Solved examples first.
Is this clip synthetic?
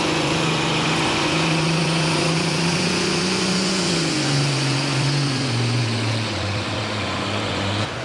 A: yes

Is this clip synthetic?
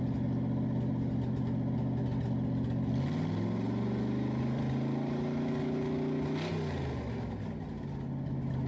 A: no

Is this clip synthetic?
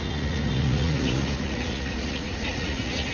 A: yes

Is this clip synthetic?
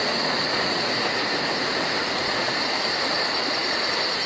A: yes